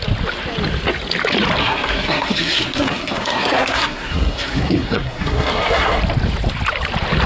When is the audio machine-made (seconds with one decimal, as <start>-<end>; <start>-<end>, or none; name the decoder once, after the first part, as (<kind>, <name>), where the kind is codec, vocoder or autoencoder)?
1.6-6.0 (codec, SNAC)